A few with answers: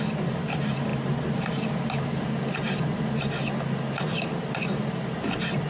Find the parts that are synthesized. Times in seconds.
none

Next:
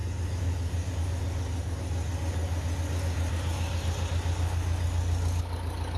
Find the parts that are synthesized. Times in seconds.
none

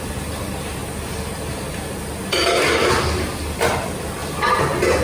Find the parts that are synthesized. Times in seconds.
0.0-0.8 (vocoder, BigVGAN v2); 3.8-4.2